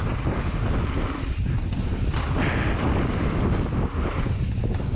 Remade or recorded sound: recorded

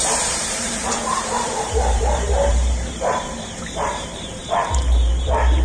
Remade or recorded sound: remade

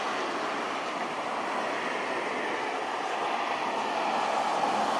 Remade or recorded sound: recorded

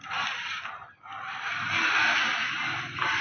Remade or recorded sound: recorded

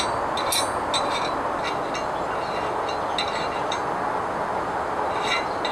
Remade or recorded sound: recorded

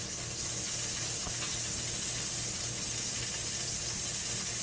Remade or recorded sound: recorded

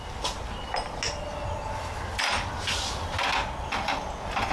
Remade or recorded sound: recorded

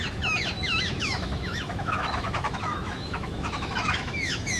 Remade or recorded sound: remade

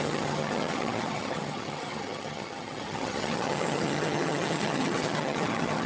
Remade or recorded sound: remade